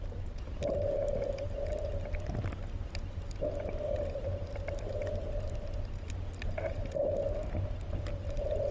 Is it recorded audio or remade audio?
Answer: recorded